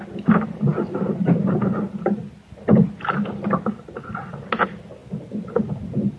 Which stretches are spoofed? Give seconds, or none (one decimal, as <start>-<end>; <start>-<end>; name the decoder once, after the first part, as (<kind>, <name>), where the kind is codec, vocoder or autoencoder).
none